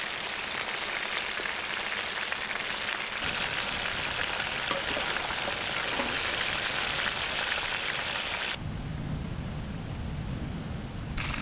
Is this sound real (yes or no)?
yes